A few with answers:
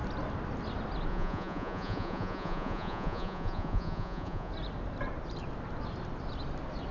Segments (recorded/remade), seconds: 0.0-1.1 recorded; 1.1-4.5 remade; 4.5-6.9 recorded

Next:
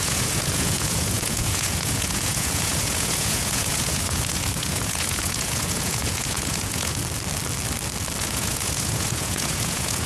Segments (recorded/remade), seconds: 0.0-7.0 remade; 7.0-8.2 recorded; 8.2-10.1 remade

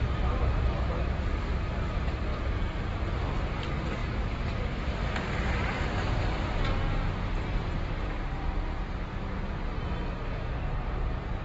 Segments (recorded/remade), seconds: 0.0-11.4 recorded

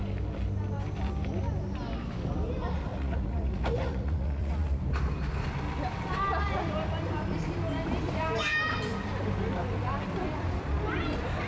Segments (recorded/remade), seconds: 0.0-2.9 recorded; 2.9-4.8 remade; 4.8-11.5 recorded

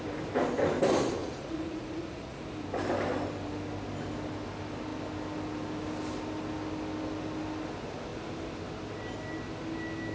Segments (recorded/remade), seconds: 0.0-1.2 recorded; 1.2-2.4 remade; 2.4-10.1 recorded